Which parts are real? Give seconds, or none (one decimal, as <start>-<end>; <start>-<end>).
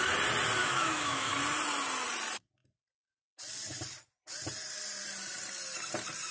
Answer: 0.0-0.6; 1.3-6.3